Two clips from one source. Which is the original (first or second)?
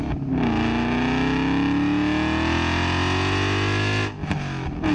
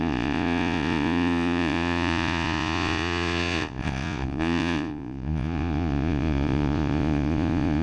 first